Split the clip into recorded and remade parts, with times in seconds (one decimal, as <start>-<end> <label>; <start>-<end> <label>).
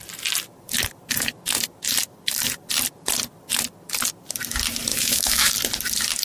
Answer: 0.0-4.9 recorded; 4.9-5.5 remade; 5.5-6.2 recorded